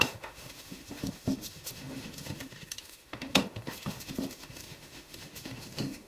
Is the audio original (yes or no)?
no